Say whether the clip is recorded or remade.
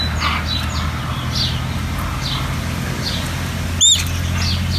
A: recorded